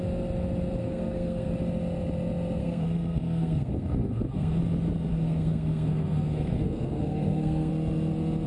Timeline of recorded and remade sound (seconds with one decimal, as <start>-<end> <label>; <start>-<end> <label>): 0.0-0.8 recorded; 0.8-1.5 remade; 1.5-2.6 recorded; 2.6-4.6 remade; 4.6-5.1 recorded; 5.1-7.7 remade; 7.7-8.5 recorded